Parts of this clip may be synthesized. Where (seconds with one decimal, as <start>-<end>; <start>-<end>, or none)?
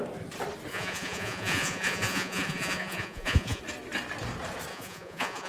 0.7-3.6; 4.7-5.5